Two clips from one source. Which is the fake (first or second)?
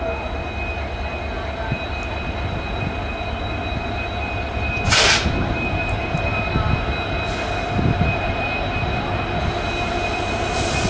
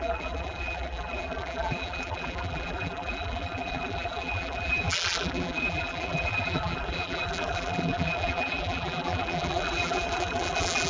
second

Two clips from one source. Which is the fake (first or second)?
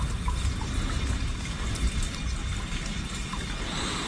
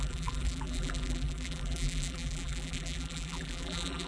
second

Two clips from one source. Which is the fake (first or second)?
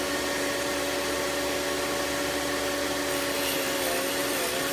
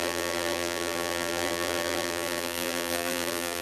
second